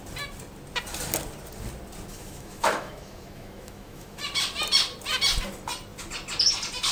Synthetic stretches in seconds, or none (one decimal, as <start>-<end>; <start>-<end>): 2.1-4.2